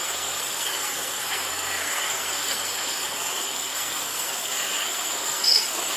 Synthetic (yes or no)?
yes